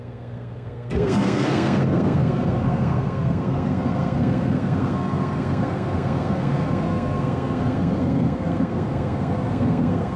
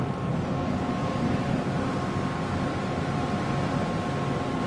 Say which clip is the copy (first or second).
first